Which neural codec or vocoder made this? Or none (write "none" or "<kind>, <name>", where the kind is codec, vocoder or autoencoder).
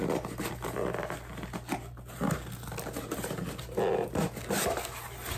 none